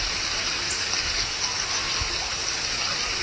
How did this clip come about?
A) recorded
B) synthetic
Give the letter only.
A